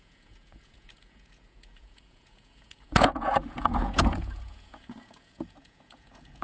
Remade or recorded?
remade